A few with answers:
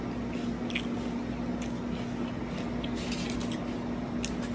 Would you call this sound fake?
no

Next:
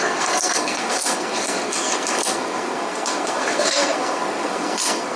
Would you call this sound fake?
yes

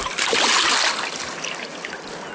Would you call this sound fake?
no